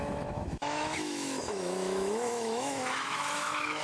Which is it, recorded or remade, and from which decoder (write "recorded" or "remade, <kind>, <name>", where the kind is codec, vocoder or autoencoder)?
remade, autoencoder, DAC-VAE